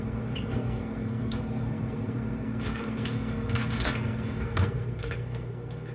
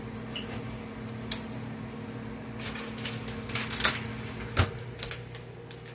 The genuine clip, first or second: second